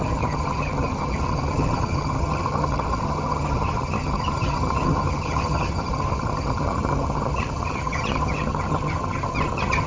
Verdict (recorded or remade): remade